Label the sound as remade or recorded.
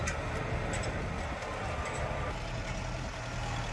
recorded